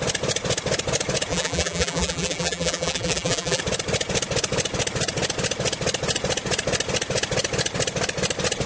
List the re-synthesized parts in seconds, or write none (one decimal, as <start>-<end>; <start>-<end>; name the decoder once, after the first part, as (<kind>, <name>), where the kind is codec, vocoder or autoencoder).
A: 1.3-3.6 (vocoder, BigVGAN v2)